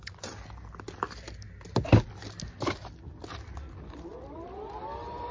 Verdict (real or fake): real